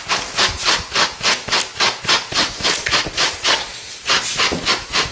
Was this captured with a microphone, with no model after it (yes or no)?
yes